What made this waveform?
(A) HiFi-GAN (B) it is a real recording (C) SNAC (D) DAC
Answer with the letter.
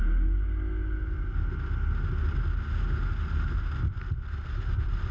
B